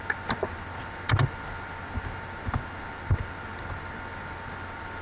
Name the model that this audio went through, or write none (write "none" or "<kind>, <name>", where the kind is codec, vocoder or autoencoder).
none